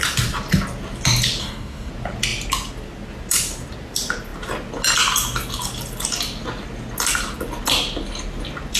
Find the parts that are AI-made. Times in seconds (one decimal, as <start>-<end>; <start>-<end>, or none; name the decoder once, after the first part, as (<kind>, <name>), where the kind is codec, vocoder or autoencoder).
1.4-1.9 (codec, DAC)